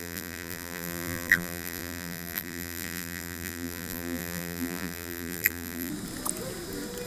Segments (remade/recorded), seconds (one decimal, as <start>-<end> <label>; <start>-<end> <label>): 0.0-5.9 remade; 5.9-7.1 recorded